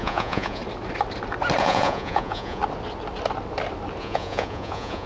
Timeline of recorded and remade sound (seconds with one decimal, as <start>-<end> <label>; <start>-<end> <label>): 0.0-0.6 remade; 0.6-1.6 recorded; 1.6-2.6 remade; 2.6-4.0 recorded; 4.0-5.1 remade